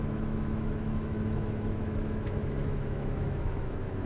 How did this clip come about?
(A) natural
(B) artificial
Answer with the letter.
B